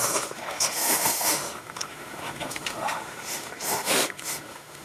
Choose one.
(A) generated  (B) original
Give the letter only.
A